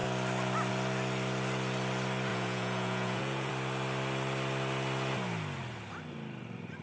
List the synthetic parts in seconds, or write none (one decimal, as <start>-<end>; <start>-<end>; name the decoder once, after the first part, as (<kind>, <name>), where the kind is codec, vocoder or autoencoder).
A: 2.3-3.5 (vocoder, Vocos)